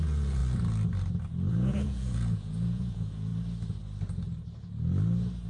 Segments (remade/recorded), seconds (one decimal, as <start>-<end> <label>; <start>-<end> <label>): 0.0-0.4 remade; 0.4-1.5 recorded; 1.5-3.3 remade; 3.3-5.5 recorded

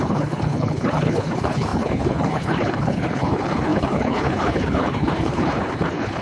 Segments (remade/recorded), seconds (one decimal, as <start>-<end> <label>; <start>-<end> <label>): 0.0-6.2 remade